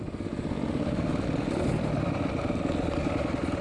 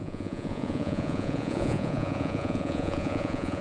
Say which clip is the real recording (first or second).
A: first